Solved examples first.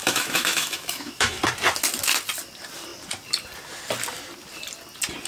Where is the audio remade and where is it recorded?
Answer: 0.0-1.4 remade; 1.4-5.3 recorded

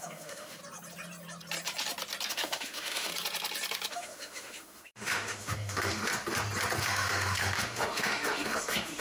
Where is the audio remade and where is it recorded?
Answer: 0.0-0.6 remade; 0.6-2.3 recorded; 2.3-3.1 remade; 3.1-3.9 recorded; 3.9-6.1 remade; 6.1-6.8 recorded; 6.8-9.0 remade